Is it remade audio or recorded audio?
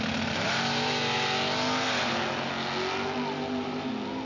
recorded